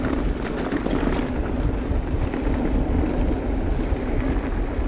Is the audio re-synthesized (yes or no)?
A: no